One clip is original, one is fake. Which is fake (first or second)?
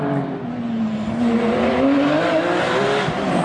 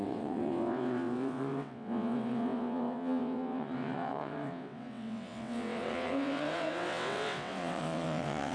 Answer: second